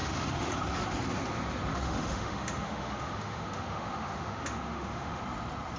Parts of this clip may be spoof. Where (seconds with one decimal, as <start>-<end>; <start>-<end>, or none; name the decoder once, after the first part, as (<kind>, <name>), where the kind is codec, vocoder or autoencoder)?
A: 0.0-0.5 (autoencoder, DAC-VAE); 1.7-5.2